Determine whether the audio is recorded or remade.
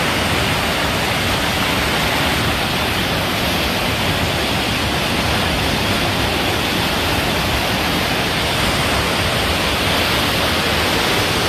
recorded